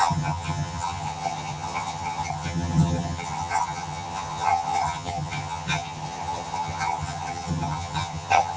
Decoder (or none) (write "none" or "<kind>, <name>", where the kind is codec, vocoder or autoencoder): vocoder, HiFi-GAN